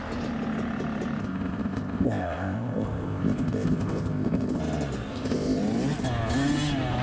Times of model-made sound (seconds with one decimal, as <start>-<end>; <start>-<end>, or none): 1.2-4.6; 5.1-5.6